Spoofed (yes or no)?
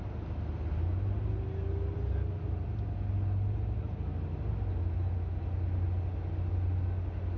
no